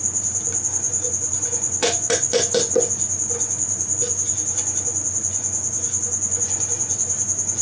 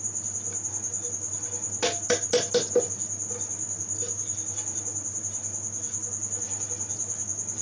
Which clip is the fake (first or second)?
first